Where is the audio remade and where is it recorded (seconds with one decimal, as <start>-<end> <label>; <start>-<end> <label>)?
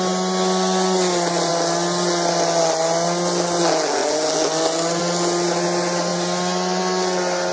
0.0-7.5 recorded